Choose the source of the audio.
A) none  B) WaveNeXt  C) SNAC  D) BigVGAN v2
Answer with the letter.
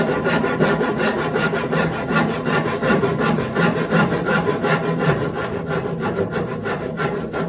D